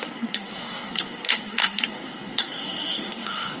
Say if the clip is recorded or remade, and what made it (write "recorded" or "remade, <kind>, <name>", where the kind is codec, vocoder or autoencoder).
remade, codec, SNAC